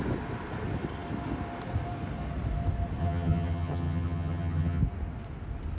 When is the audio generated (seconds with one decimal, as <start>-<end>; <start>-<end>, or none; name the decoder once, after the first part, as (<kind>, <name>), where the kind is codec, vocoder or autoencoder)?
3.0-4.8 (vocoder, HiFi-GAN)